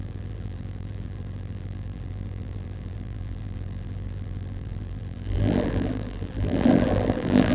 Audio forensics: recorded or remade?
remade